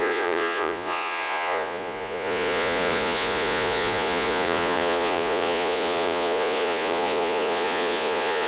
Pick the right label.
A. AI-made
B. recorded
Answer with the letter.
A